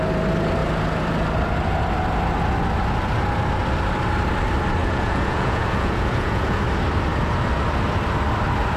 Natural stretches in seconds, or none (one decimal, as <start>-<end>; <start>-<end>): 0.0-4.8; 6.6-8.8

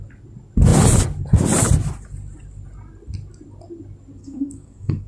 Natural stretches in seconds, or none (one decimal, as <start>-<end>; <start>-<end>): 0.0-4.2

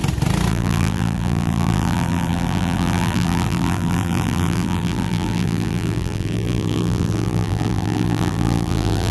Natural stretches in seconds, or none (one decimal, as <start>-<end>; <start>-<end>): 0.0-0.5

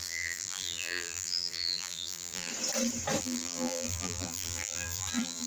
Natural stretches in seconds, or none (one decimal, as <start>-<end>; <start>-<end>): 2.5-3.2

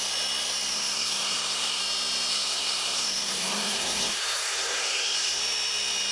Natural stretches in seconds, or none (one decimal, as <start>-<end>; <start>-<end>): 0.0-0.7; 1.8-2.3; 5.4-6.1

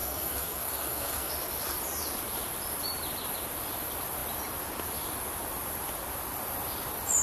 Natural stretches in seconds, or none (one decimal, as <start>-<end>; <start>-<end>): 1.3-7.2

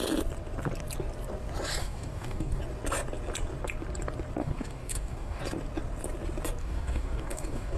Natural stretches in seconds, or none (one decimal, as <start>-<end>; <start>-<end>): 0.0-1.8; 2.6-4.4; 5.4-6.6

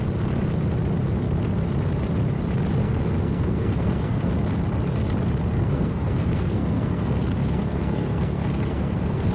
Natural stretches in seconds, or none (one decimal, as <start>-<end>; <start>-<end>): 0.0-2.8; 4.3-5.5